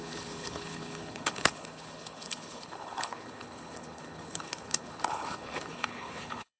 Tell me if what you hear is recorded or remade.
remade